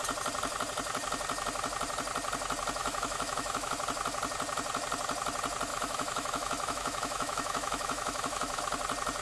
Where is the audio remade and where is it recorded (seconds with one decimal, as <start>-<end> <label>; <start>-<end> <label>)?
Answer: 0.0-2.8 recorded; 2.8-3.7 remade; 3.7-5.7 recorded; 5.7-8.6 remade; 8.6-9.2 recorded